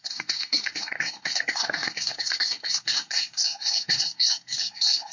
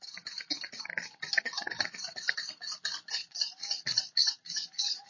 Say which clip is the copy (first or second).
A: first